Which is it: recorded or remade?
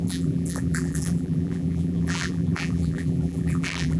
remade